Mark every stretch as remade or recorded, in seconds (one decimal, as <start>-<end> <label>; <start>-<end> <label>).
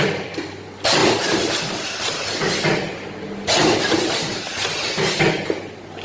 0.0-6.0 recorded